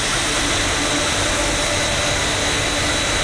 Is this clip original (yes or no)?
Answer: yes